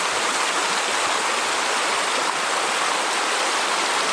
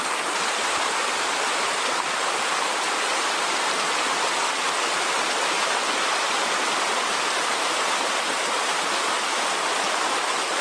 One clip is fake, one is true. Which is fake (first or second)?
second